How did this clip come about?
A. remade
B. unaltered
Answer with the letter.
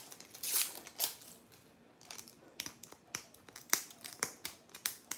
B